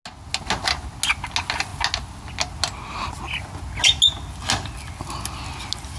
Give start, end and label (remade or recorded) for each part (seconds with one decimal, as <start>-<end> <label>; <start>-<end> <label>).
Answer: 0.0-6.0 recorded